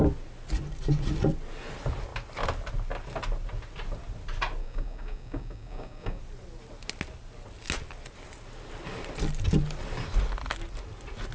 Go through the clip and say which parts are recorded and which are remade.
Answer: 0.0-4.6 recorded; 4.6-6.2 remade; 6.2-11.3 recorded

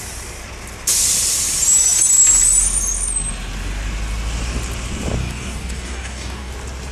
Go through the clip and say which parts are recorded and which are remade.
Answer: 0.0-5.2 recorded; 5.2-6.5 remade; 6.5-6.9 recorded

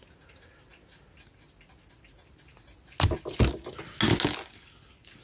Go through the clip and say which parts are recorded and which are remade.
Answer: 0.0-5.2 recorded

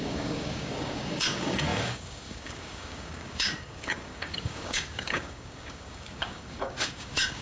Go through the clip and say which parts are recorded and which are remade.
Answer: 0.0-7.4 remade

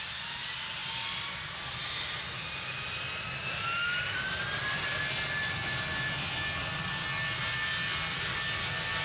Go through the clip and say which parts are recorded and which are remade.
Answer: 0.0-9.0 recorded